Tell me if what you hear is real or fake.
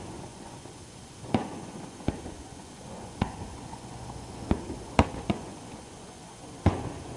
fake